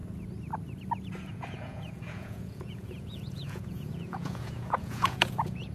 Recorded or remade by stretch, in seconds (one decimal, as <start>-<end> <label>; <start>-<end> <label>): 0.0-1.3 recorded; 1.3-5.7 remade